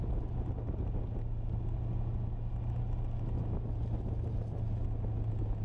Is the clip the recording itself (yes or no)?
yes